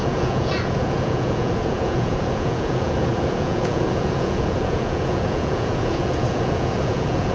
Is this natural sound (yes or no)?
no